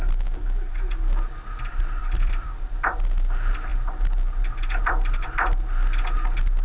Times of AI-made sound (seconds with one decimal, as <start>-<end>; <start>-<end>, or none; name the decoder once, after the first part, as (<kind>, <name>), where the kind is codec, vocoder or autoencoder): 2.0-2.6 (vocoder, BigVGAN v2)